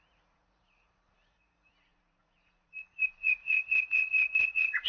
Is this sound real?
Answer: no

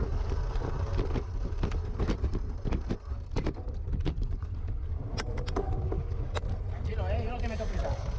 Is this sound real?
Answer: yes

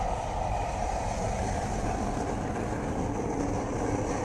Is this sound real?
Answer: yes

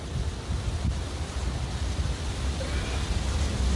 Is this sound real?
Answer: yes